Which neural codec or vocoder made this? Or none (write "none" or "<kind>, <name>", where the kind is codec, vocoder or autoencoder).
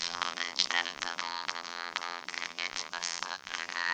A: vocoder, BigVGAN v2